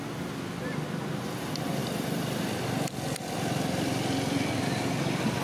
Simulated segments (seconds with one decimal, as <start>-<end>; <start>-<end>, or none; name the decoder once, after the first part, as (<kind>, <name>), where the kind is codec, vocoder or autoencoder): 1.8-5.0 (vocoder, BigVGAN v2)